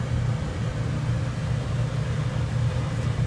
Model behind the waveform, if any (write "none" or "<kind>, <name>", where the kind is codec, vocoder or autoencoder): none